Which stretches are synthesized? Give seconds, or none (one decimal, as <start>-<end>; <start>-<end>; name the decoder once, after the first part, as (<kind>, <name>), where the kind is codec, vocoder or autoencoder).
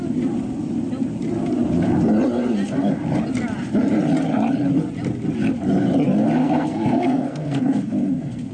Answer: 6.4-8.5 (codec, SNAC)